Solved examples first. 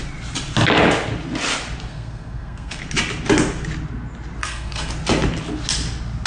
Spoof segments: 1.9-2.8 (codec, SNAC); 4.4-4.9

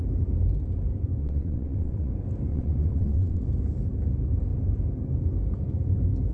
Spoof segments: 1.2-2.1 (vocoder, WaveNeXt); 2.5-3.4

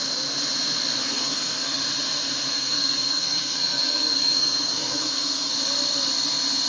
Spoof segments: 1.0-1.8 (codec, SNAC); 2.5-5.5

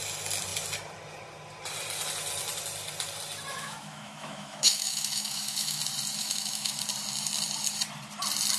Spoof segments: 3.5-5.8 (autoencoder, DAC-VAE); 6.2-6.8

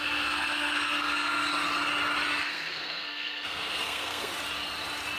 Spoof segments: 0.0-1.5 (codec, SNAC); 2.4-4.3

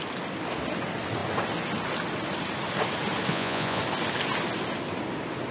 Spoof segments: 3.3-3.8 (vocoder, Vocos)